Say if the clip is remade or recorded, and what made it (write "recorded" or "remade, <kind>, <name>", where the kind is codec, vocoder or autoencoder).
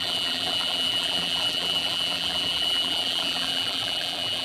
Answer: remade, vocoder, BigVGAN v2